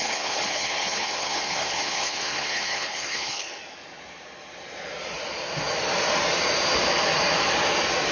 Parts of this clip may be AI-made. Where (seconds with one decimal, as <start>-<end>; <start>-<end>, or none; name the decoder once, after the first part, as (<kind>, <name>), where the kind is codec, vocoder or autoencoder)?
0.0-3.6 (codec, HILCodec)